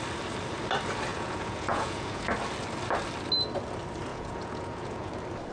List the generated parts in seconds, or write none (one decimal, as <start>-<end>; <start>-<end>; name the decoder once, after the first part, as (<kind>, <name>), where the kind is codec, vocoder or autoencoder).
1.1-2.2 (vocoder, Vocos); 4.1-5.1

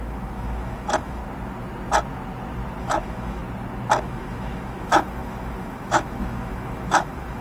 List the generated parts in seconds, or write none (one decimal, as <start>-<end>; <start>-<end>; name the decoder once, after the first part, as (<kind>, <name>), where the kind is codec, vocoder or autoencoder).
0.0-1.2 (autoencoder, DAC-VAE); 2.8-3.4; 4.0-7.4